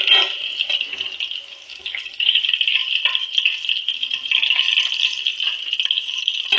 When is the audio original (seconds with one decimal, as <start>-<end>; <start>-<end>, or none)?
0.0-1.7; 2.4-6.6